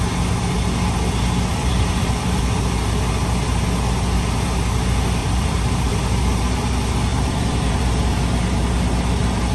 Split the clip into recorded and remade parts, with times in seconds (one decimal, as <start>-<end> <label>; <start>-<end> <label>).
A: 0.0-1.5 recorded; 1.5-2.4 remade; 2.4-5.2 recorded; 5.2-5.9 remade; 5.9-7.1 recorded; 7.1-8.0 remade; 8.0-9.5 recorded